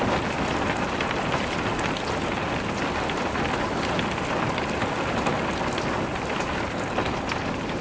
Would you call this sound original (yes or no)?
yes